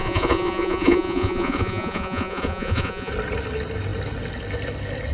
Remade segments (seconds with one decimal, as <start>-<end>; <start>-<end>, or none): 0.0-3.1